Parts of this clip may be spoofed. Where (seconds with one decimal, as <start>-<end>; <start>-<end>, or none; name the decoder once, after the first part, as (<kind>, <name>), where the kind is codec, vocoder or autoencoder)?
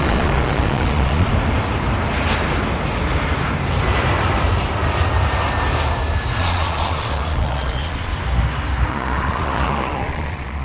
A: 0.0-1.3 (vocoder, Vocos); 6.4-8.1; 8.9-10.6